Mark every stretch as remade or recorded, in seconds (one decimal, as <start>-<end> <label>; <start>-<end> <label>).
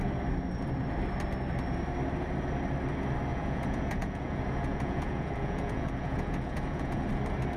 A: 0.0-3.3 recorded; 3.3-7.1 remade; 7.1-7.6 recorded